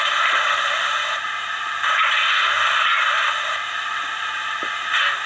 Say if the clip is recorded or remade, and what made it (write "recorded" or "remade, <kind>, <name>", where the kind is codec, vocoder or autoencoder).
recorded